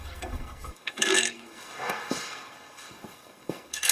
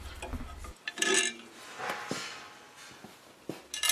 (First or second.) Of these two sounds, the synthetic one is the first